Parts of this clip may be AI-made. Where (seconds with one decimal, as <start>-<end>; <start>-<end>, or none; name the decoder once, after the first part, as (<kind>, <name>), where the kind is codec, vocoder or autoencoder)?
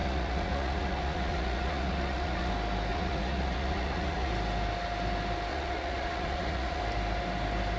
0.0-2.5 (vocoder, Vocos); 2.9-4.3; 5.5-6.8